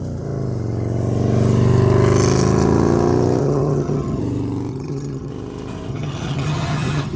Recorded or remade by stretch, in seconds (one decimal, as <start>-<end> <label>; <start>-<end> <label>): 0.0-3.4 recorded; 3.4-4.2 remade; 4.2-4.7 recorded; 4.7-5.3 remade; 5.3-5.9 recorded; 5.9-7.2 remade